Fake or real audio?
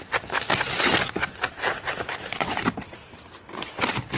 real